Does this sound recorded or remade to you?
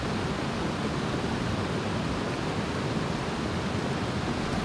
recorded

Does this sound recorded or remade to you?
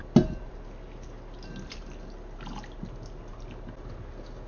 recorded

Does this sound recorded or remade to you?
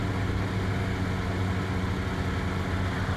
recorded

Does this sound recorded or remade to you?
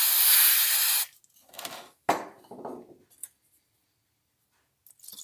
recorded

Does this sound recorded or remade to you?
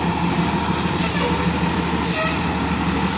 recorded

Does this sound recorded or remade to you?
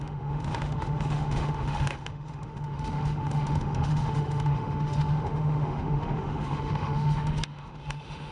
remade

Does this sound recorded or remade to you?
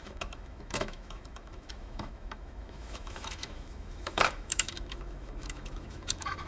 remade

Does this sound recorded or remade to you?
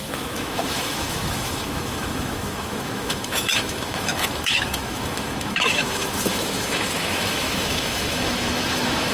remade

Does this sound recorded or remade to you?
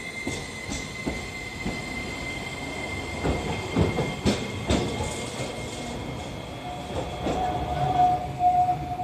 recorded